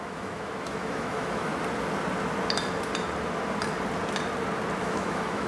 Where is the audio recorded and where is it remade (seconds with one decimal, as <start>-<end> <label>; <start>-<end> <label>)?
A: 0.0-1.5 remade; 1.5-4.8 recorded; 4.8-5.5 remade